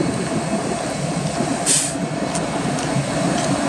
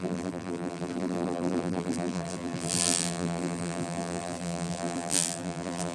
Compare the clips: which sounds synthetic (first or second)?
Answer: second